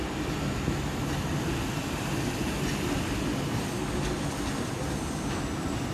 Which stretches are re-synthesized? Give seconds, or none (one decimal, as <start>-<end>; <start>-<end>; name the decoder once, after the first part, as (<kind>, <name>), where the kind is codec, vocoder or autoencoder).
none